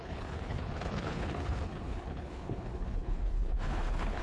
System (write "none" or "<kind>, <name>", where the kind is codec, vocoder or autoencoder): codec, HILCodec